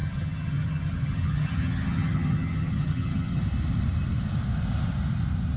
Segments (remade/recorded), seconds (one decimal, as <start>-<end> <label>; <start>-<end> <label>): 0.0-3.4 remade; 3.4-5.6 recorded